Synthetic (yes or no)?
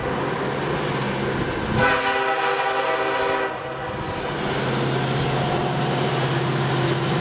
no